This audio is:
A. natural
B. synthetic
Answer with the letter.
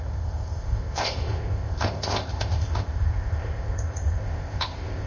B